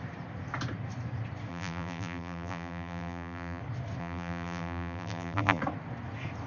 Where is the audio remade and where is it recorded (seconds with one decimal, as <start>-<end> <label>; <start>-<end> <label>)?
0.0-1.5 recorded; 1.5-3.6 remade; 3.6-4.0 recorded; 4.0-5.6 remade; 5.6-6.5 recorded